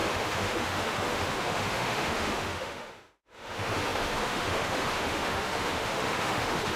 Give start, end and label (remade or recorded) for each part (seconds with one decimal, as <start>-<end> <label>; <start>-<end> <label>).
0.0-6.8 remade